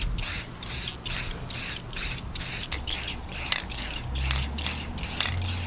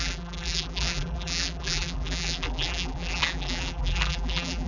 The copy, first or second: second